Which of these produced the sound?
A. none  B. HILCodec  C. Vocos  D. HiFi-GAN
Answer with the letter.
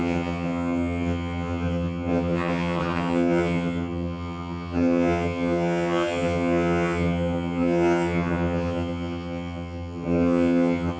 D